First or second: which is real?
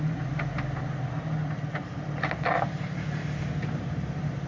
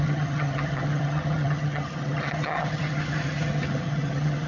first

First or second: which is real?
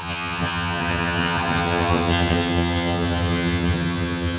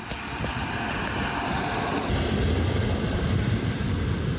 second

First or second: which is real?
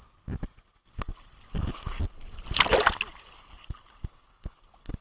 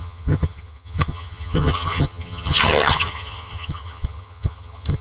first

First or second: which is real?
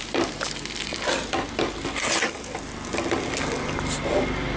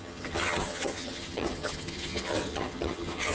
first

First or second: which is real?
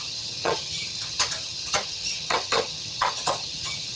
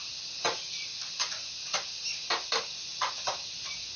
second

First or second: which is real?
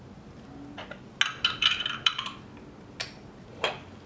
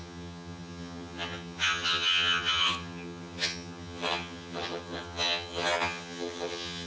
first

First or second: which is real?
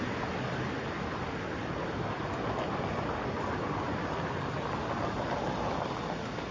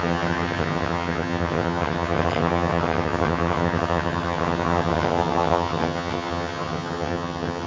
first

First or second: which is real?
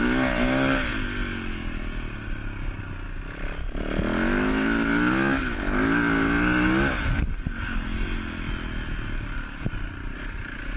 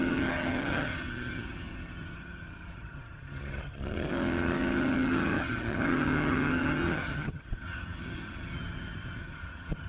first